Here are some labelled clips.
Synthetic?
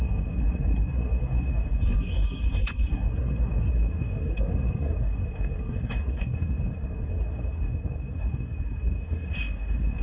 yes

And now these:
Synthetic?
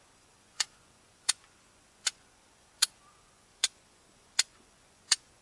yes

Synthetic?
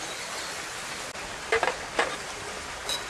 no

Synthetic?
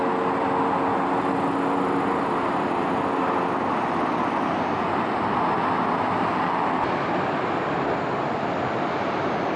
no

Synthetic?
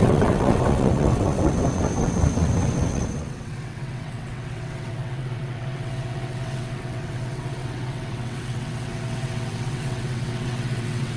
yes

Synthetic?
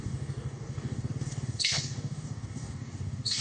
yes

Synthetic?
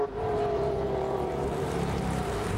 yes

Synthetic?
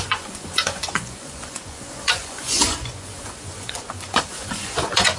yes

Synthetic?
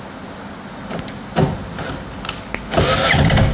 no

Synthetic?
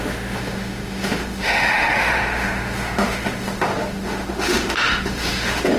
yes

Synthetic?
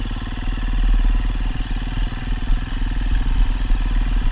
no